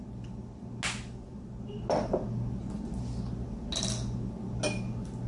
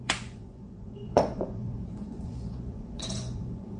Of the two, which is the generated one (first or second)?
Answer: second